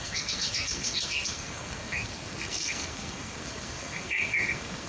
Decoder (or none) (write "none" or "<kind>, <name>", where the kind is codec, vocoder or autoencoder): codec, SNAC